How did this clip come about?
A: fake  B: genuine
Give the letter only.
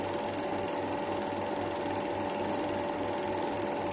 B